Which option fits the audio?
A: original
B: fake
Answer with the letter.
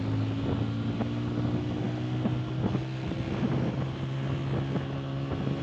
A